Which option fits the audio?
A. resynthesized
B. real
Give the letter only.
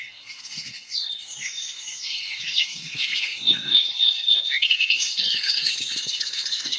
A